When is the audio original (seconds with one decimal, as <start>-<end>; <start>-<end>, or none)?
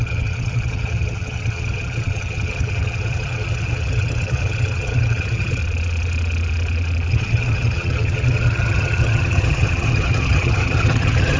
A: 5.6-7.1